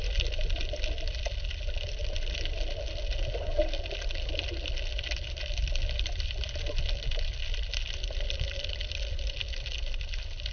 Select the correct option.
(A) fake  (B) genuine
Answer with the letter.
B